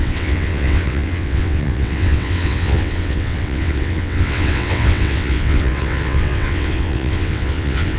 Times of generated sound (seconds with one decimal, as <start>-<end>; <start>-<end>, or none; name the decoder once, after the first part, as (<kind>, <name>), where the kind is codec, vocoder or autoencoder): 0.0-8.0 (vocoder, WaveNeXt)